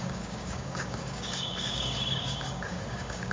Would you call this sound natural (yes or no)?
no